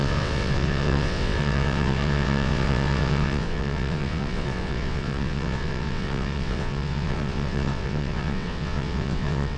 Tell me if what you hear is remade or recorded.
remade